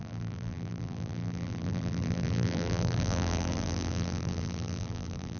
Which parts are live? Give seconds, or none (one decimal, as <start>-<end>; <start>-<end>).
none